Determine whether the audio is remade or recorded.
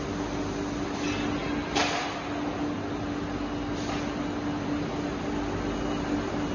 recorded